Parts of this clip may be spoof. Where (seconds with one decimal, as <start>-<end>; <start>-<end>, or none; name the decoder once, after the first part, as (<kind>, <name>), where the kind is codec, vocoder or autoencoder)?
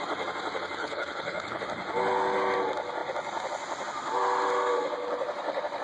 0.8-1.6 (codec, HILCodec)